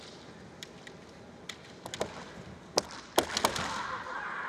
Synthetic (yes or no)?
no